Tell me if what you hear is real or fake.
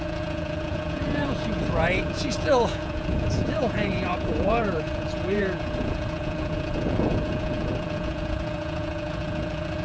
fake